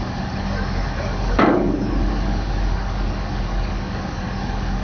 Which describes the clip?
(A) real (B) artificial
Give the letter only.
B